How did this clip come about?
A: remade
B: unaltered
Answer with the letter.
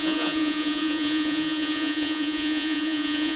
A